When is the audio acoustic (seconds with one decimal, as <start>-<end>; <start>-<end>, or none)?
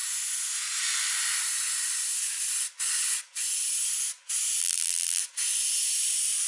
0.0-4.6; 5.2-6.5